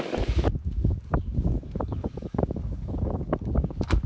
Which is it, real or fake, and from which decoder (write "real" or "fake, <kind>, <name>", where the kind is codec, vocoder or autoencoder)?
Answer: fake, codec, DAC